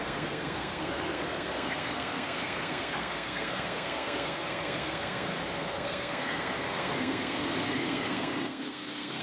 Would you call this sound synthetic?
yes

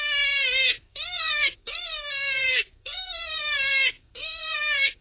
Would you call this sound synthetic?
yes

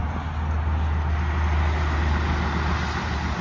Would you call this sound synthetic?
no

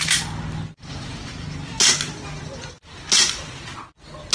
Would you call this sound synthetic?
no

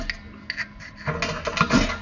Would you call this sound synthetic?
no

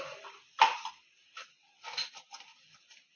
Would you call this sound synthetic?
no